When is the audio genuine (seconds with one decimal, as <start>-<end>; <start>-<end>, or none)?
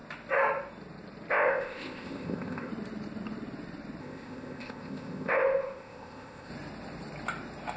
0.0-1.3; 2.7-4.0; 6.5-7.8